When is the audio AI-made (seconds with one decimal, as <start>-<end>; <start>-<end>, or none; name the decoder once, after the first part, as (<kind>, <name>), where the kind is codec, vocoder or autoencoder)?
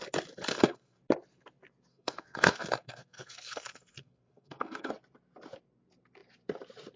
0.5-1.0 (codec, SNAC); 1.9-4.9